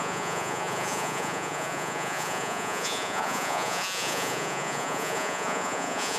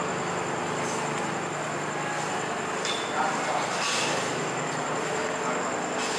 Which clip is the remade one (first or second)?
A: first